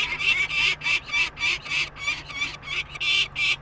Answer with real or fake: real